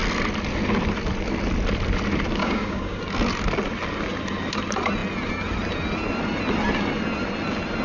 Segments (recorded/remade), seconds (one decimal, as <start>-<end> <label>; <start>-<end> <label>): 0.0-2.4 recorded; 2.4-3.0 remade; 3.0-7.8 recorded